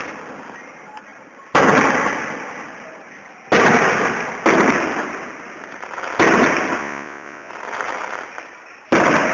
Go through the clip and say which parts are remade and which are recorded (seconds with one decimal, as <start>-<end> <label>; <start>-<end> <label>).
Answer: 0.0-6.8 recorded; 6.8-7.5 remade; 7.5-9.3 recorded